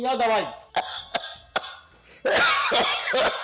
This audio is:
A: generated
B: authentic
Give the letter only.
B